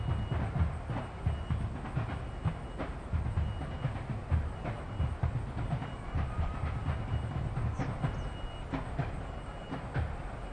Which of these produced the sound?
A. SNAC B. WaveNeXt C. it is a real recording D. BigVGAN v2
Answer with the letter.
C